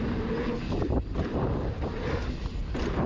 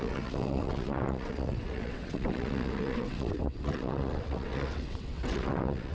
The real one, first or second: first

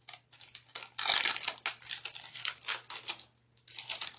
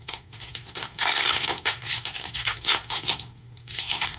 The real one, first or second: first